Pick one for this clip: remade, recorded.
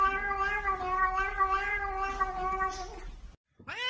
recorded